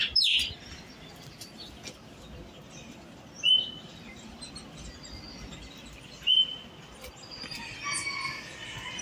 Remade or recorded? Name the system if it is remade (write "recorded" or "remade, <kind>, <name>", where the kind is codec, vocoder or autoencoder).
recorded